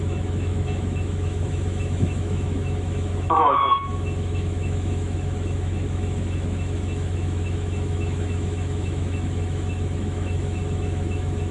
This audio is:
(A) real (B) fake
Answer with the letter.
B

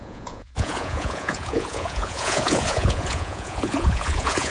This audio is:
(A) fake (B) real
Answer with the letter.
A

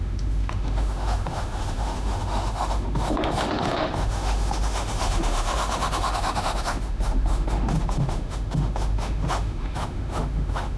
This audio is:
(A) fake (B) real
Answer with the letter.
A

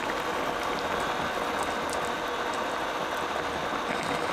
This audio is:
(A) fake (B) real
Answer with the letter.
B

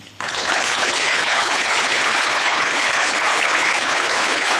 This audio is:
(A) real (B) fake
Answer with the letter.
B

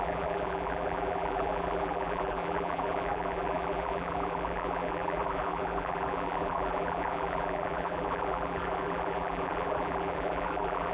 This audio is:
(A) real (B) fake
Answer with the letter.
B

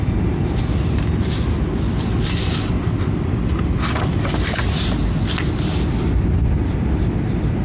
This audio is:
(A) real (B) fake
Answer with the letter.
A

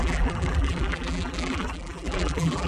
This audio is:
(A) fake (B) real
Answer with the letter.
A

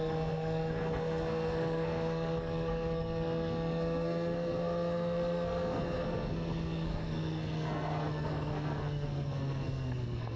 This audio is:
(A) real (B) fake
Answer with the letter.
B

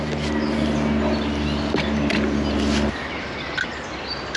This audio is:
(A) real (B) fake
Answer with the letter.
A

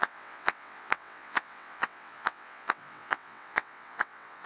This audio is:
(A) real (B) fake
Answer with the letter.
B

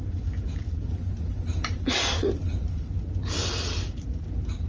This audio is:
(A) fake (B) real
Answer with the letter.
B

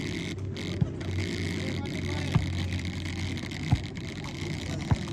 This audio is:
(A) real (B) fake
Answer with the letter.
A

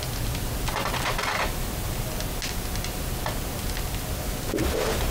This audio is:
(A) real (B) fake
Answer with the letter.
A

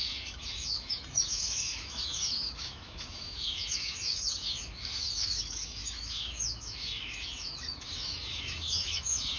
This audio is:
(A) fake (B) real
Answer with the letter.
A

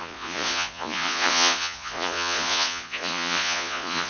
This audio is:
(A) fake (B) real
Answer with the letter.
A